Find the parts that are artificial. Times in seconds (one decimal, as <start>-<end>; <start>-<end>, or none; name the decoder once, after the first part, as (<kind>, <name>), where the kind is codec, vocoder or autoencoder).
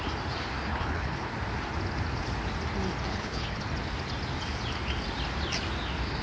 0.7-1.3 (codec, HILCodec); 3.1-3.6